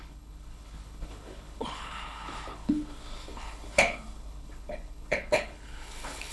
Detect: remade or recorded remade